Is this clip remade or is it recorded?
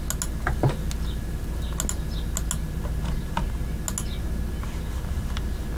recorded